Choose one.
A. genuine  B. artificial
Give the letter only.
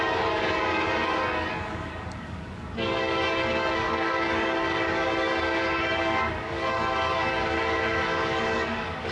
B